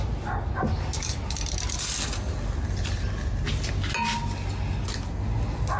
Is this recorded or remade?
recorded